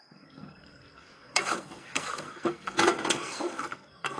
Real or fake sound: fake